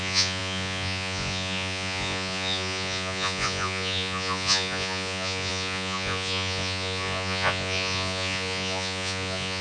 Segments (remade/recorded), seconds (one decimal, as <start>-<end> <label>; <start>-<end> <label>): 0.0-9.6 remade